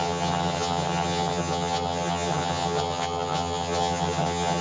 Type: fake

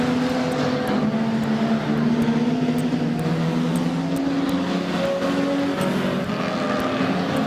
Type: real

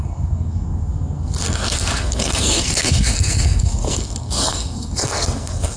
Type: fake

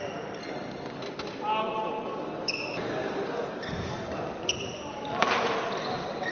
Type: real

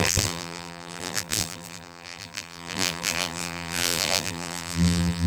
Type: fake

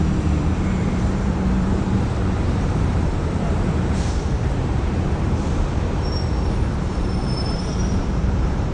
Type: fake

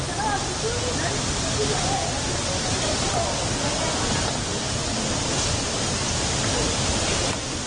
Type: real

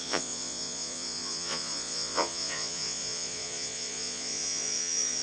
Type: fake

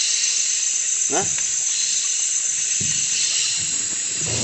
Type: real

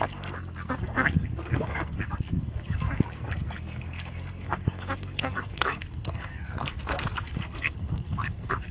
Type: fake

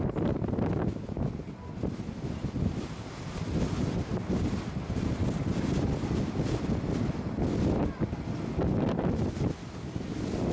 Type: real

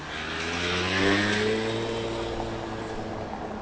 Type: real